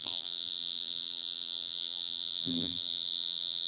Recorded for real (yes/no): no